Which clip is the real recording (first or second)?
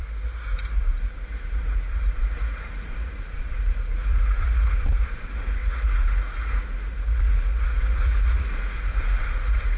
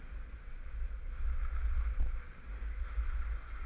second